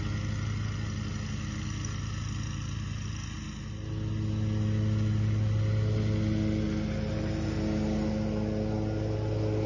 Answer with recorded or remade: recorded